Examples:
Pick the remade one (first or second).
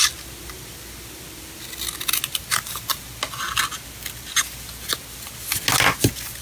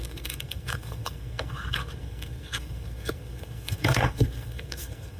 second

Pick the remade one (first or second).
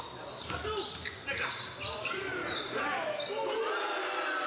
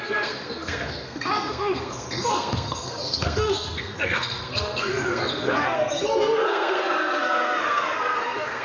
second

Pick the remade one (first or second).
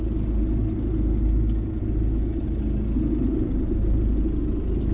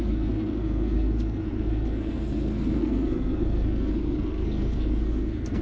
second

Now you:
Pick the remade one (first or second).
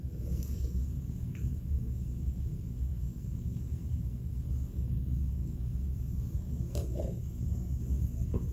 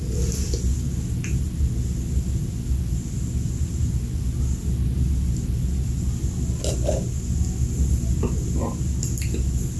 first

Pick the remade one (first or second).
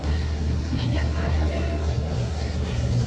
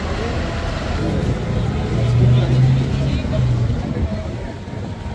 first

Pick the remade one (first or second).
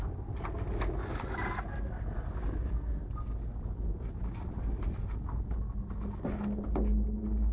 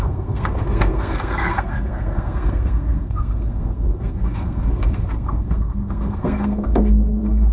second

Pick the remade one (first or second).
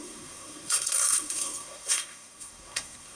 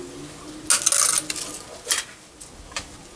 first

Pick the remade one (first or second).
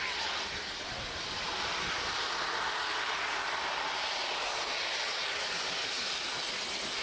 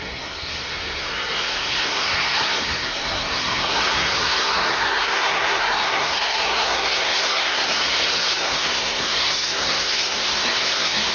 second